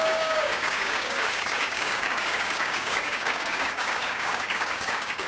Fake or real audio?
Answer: fake